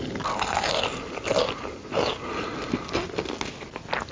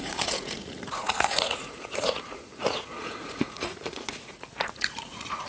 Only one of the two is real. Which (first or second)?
first